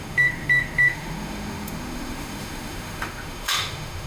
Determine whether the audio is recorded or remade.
remade